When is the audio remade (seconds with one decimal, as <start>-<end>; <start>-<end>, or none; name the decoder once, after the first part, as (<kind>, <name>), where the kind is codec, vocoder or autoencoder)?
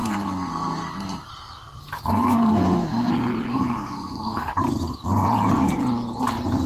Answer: 0.0-1.3 (codec, SNAC); 2.1-3.1; 3.5-4.5